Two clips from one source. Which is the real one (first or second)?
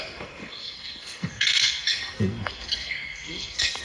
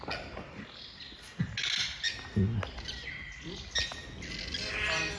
second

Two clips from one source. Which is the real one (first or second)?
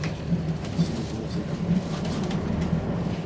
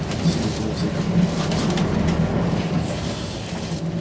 second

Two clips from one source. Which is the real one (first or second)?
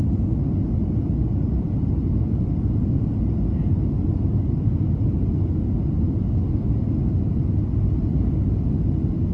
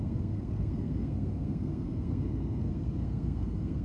first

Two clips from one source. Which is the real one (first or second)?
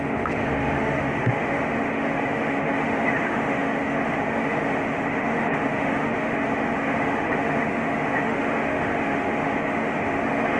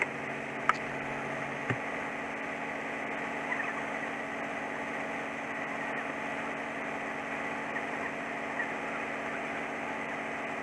second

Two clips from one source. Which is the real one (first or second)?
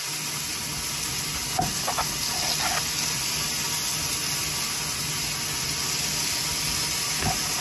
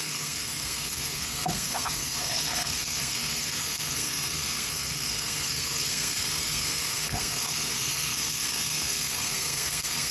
first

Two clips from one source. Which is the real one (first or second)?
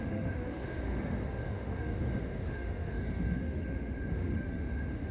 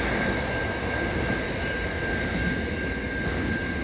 second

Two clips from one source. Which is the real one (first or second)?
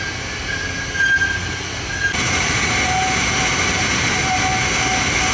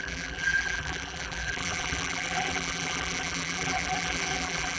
first